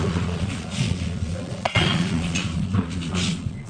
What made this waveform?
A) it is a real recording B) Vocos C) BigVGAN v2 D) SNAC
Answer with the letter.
B